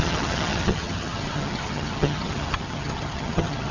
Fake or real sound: fake